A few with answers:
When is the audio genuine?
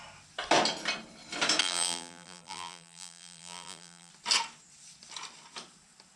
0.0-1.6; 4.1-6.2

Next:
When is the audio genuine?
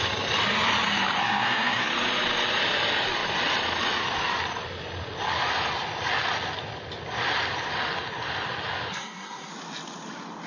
0.0-1.2; 1.9-8.9; 9.5-10.5